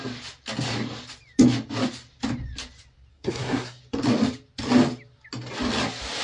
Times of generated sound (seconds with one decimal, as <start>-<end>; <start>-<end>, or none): 3.1-3.8